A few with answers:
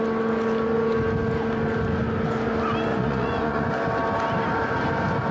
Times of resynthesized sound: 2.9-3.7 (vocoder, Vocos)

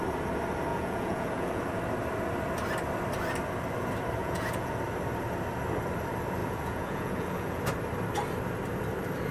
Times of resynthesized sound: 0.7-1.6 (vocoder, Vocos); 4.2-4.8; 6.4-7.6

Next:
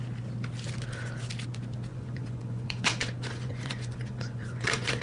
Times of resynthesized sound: 1.9-5.0 (vocoder, Vocos)

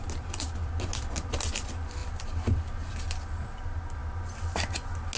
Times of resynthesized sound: none

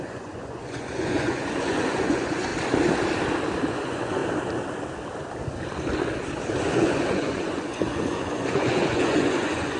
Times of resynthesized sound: 0.0-2.5 (vocoder, Vocos); 3.7-4.2; 6.6-9.8

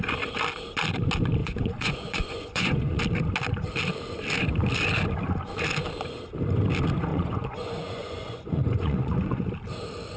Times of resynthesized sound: 1.4-3.0 (vocoder, Vocos); 7.1-9.5

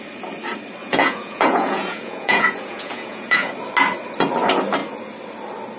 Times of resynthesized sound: 0.8-3.5 (vocoder, Vocos)